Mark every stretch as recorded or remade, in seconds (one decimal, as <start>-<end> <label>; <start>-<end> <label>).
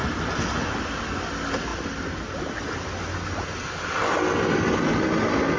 0.0-5.6 recorded